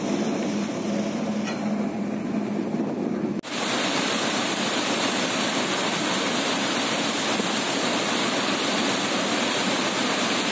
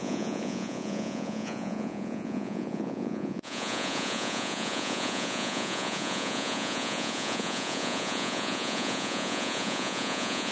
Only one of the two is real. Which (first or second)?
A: first